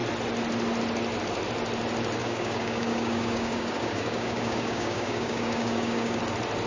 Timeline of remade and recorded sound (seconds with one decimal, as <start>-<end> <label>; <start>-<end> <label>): 0.0-2.2 recorded; 2.2-6.2 remade; 6.2-6.7 recorded